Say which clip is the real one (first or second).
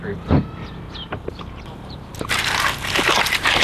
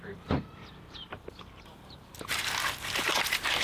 first